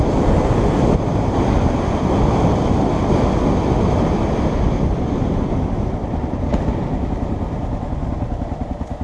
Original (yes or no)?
yes